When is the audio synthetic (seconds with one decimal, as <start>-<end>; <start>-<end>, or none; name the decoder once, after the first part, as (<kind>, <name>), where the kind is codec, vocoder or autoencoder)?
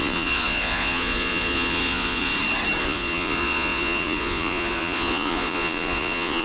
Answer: 0.0-2.3 (vocoder, Vocos); 2.8-6.4